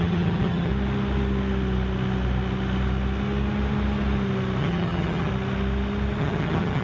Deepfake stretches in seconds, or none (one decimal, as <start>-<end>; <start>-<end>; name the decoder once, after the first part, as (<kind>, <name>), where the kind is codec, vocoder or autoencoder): 0.0-0.7 (vocoder, HiFi-GAN); 4.6-5.3; 6.2-6.8